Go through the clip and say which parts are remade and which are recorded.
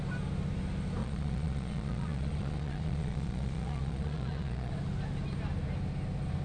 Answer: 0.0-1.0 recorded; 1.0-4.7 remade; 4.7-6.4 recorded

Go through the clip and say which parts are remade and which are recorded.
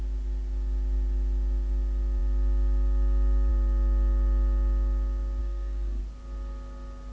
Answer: 0.0-5.4 recorded; 5.4-6.0 remade; 6.0-7.1 recorded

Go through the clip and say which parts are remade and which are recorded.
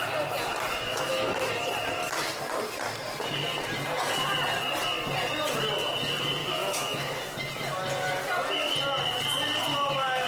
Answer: 0.0-0.9 recorded; 0.9-1.5 remade; 1.5-6.4 recorded; 6.4-7.2 remade; 7.2-10.3 recorded